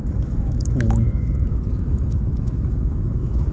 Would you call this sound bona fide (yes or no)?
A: no